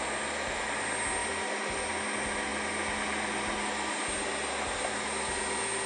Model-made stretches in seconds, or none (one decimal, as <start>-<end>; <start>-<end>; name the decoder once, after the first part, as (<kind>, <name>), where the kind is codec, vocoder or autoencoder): none

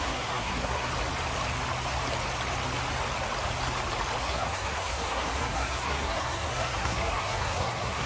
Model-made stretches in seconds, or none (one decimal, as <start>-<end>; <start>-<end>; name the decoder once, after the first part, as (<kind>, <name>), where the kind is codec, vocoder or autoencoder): 0.0-0.9 (codec, SNAC); 4.2-8.1

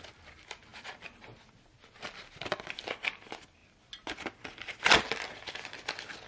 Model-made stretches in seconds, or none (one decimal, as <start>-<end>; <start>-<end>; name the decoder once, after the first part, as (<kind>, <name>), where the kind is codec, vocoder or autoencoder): none

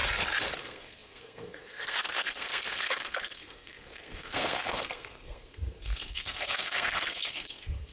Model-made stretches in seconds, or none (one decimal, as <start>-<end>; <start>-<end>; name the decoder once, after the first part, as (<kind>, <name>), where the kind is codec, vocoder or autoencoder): 0.6-7.9 (codec, SNAC)